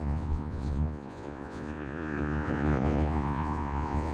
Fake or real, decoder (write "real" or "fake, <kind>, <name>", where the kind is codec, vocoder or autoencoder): fake, vocoder, Vocos